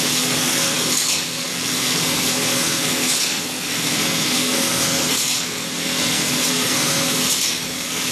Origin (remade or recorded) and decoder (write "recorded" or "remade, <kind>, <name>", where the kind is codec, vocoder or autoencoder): remade, codec, SNAC